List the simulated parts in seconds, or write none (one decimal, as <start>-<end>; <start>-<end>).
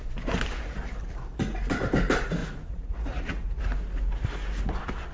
2.4-3.6